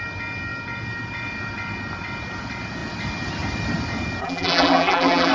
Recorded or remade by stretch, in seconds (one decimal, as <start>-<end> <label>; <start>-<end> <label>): 0.0-4.2 recorded; 4.2-5.3 remade